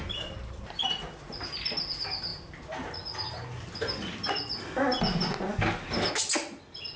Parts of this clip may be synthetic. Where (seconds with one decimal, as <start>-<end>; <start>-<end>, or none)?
none

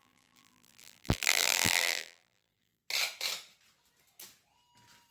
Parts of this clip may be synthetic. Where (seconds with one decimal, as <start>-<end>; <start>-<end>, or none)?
0.0-2.8